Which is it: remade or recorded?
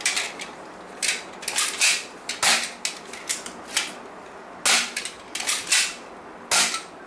recorded